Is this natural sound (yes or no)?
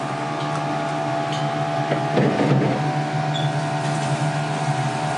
yes